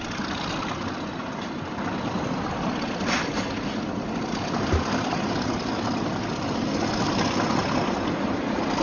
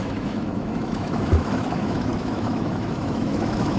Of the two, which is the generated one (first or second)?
second